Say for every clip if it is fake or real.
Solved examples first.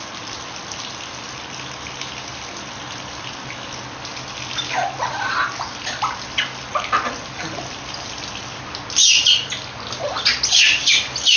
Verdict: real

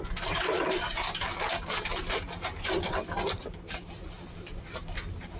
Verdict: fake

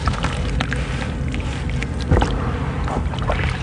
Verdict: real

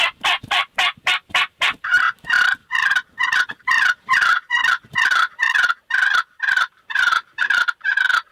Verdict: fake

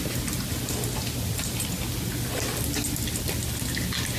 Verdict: real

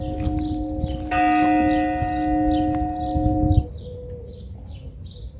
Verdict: real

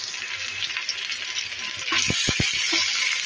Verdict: real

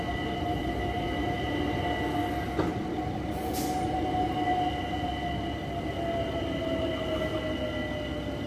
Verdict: real